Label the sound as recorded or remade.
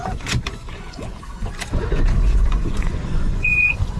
remade